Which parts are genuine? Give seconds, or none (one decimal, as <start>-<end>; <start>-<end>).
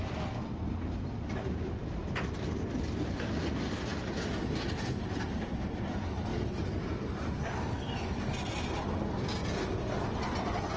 0.0-10.8